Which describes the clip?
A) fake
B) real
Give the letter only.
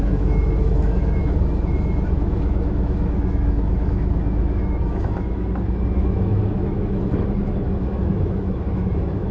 A